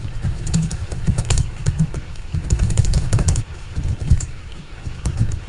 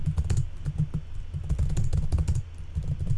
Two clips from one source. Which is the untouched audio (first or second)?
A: second